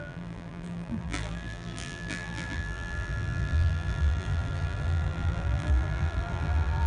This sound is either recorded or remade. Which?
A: remade